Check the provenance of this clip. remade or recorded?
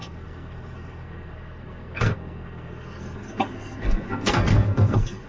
remade